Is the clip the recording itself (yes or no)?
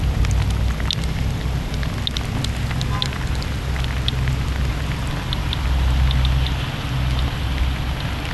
yes